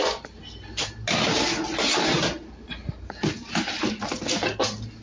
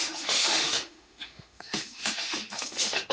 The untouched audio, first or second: first